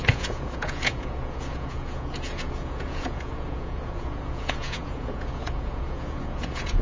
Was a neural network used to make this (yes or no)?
yes